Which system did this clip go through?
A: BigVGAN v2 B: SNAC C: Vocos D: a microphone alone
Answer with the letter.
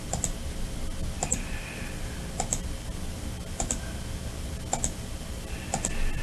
D